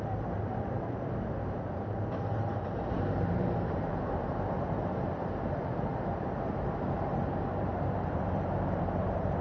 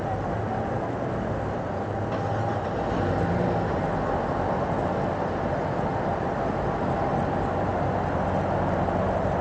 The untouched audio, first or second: second